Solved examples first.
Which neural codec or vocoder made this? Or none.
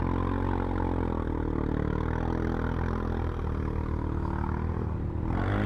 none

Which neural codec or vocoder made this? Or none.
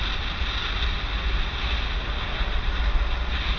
none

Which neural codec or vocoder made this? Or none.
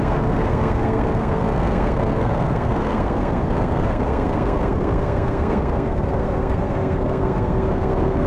codec, SNAC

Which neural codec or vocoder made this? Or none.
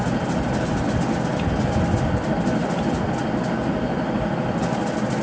none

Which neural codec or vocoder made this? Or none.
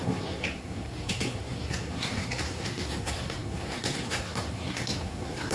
codec, SNAC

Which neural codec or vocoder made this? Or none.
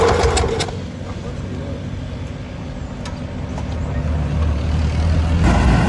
none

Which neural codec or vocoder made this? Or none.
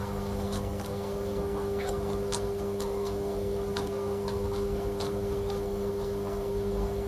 codec, SNAC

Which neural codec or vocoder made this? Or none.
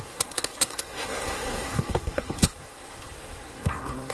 codec, SNAC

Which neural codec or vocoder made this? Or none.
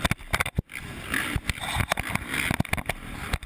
none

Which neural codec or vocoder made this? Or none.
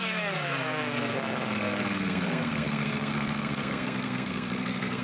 codec, SNAC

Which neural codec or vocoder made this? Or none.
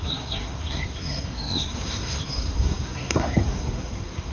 codec, SNAC